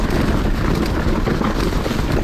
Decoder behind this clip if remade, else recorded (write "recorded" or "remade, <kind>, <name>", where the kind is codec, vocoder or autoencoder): recorded